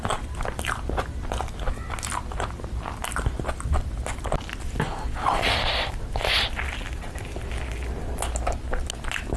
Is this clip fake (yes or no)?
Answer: no